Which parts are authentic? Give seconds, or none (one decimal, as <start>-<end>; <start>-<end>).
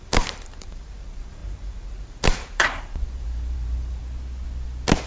4.0-5.1